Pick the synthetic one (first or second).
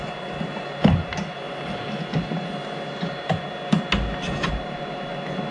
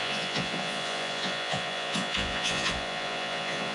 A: second